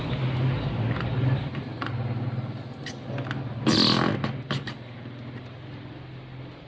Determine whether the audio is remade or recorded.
recorded